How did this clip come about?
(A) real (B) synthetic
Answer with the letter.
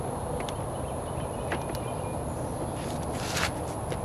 A